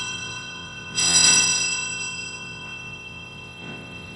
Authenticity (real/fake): fake